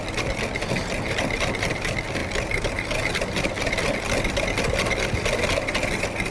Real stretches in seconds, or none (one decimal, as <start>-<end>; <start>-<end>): 0.0-6.3